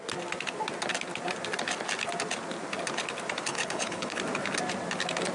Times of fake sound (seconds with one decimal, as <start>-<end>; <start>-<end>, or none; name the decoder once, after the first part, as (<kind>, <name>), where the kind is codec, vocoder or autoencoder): 3.5-4.2 (codec, HILCodec)